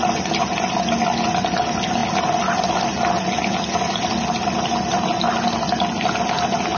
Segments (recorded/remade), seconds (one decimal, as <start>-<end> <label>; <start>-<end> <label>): 0.0-6.8 recorded